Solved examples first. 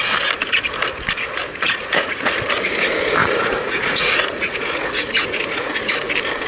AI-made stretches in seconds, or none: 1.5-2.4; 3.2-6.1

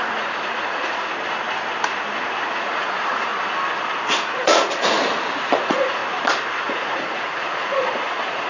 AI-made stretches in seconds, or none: 0.0-1.1; 2.5-3.3; 4.1-5.0; 5.6-6.0; 6.6-8.5

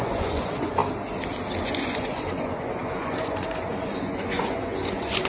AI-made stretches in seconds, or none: 0.0-0.8; 1.6-5.3